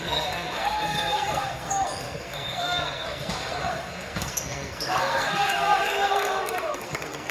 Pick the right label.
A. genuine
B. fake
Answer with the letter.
B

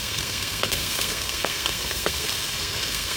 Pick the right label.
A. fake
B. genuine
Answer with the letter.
A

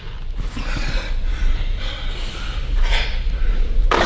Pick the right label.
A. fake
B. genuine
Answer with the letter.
B